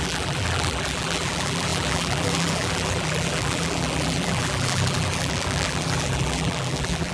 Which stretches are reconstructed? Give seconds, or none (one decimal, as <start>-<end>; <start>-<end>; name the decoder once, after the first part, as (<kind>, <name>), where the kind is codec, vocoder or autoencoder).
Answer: 0.0-7.1 (vocoder, BigVGAN v2)